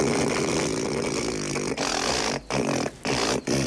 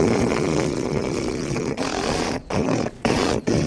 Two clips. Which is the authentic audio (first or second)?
first